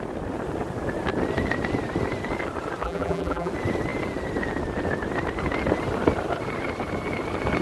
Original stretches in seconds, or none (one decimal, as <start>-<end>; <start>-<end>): 0.0-2.8; 3.5-7.6